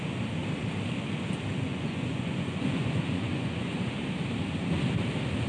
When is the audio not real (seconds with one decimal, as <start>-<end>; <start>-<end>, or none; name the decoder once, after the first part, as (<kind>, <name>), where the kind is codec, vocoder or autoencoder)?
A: 1.7-4.0 (vocoder, Vocos)